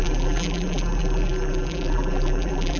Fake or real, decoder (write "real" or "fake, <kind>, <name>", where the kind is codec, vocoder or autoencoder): fake, vocoder, BigVGAN v2